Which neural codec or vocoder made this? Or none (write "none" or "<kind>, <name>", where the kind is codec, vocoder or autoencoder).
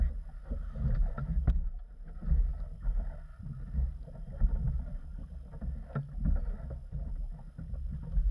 none